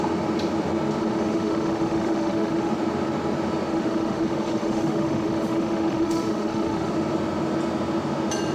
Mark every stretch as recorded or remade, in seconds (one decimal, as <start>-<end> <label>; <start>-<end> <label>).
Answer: 0.0-1.0 recorded; 1.0-2.7 remade; 2.7-3.7 recorded; 3.7-6.9 remade; 6.9-8.5 recorded